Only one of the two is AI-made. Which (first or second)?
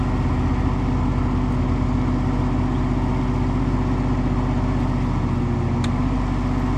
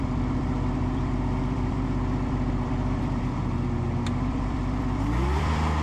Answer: second